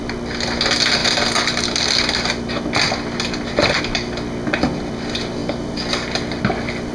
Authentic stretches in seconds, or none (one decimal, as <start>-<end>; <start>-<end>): 0.0-6.9